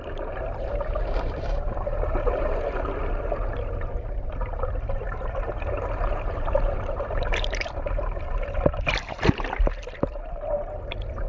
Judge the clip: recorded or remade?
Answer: remade